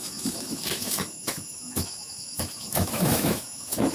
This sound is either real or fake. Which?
fake